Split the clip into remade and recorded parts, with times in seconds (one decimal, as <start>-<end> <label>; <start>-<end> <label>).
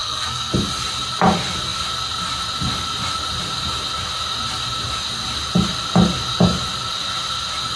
0.0-0.5 remade; 0.5-7.8 recorded